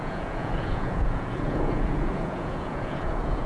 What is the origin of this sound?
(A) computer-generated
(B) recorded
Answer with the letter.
A